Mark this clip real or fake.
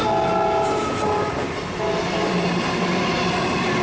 real